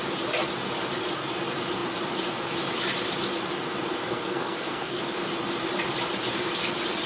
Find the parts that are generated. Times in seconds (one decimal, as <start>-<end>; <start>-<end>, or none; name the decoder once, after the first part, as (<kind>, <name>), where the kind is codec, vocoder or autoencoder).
4.0-5.0 (codec, SNAC)